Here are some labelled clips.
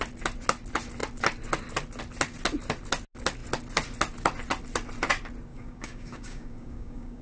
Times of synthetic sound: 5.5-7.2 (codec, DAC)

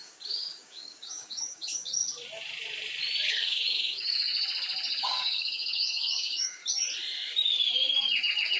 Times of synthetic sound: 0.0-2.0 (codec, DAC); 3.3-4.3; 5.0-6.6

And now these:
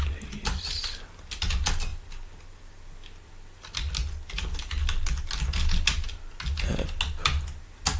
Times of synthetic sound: none

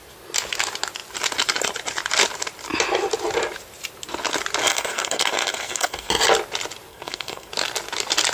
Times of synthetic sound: 4.6-6.1 (codec, SNAC); 6.9-7.5

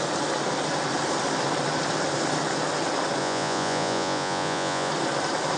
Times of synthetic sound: 3.2-4.9 (vocoder, Vocos)